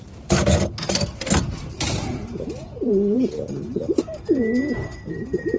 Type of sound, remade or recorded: remade